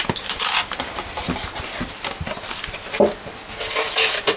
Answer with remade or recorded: recorded